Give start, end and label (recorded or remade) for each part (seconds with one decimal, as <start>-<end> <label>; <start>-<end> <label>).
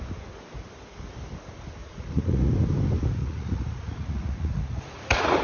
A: 0.0-1.8 recorded; 1.8-2.5 remade; 2.5-3.2 recorded; 3.2-5.4 remade